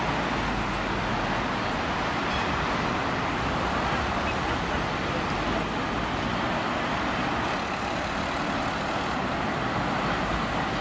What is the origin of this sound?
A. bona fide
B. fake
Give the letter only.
A